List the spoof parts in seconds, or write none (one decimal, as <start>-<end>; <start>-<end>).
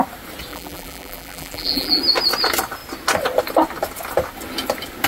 0.5-2.0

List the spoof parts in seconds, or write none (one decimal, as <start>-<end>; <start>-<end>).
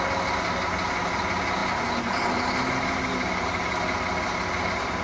none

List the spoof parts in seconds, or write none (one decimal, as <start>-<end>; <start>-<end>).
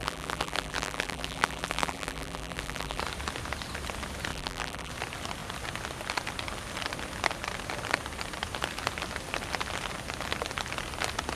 0.0-3.0; 4.3-4.9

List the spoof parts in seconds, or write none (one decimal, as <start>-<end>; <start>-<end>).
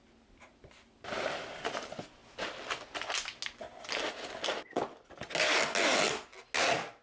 none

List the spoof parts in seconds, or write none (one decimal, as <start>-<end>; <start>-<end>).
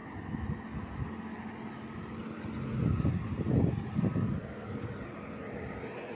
none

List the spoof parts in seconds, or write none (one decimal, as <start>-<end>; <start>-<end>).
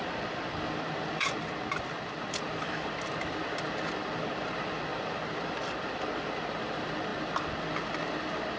none